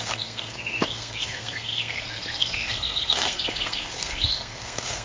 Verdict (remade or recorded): remade